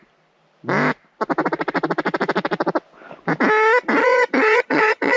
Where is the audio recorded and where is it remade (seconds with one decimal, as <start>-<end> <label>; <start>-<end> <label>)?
0.0-4.0 recorded; 4.0-5.2 remade